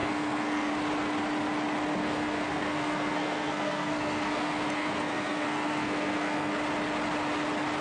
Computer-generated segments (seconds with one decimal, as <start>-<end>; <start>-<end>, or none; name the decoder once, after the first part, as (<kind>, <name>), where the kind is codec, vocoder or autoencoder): 0.0-0.7 (codec, SNAC); 2.0-6.5